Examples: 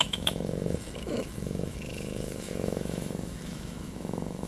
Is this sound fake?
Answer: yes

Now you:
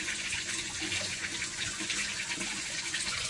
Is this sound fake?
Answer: yes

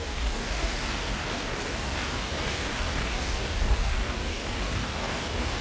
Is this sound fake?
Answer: yes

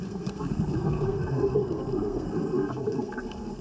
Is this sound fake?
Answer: yes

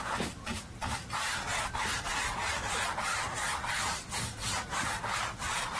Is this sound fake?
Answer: yes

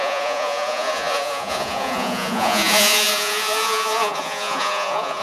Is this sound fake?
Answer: yes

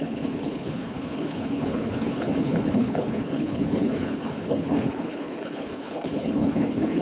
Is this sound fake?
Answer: yes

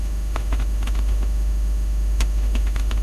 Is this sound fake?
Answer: yes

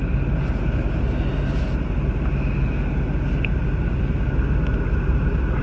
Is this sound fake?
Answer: no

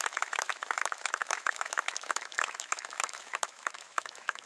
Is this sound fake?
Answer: yes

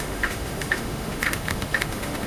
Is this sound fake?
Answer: yes